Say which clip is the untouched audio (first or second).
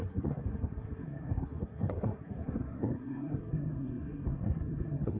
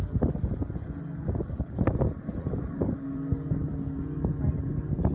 second